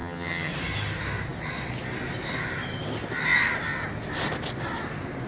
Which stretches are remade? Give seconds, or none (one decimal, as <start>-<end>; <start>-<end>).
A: 0.0-0.5